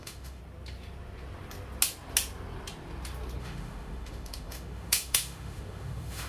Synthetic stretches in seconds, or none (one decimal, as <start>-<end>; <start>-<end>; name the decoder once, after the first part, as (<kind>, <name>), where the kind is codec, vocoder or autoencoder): 0.0-0.4 (autoencoder, DAC-VAE); 3.4-6.3